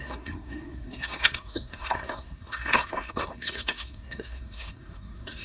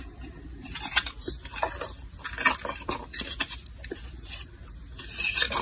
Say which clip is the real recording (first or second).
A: second